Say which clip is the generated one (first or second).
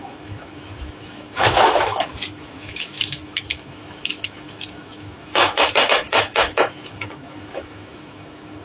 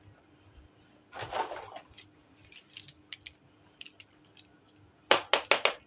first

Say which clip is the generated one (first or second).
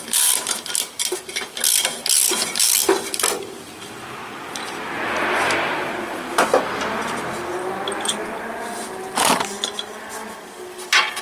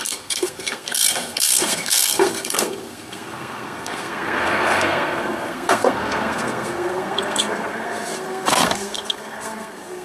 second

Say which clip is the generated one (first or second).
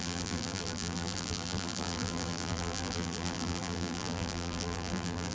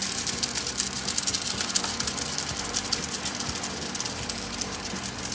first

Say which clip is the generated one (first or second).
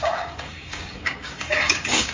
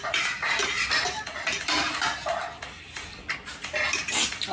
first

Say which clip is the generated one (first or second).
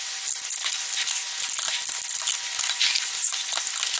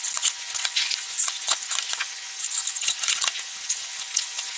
second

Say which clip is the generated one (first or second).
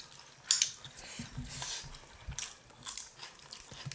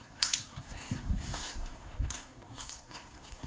second